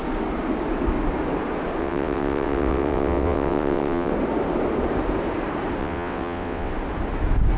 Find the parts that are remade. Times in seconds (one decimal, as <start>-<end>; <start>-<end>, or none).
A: 1.8-4.1; 5.8-6.7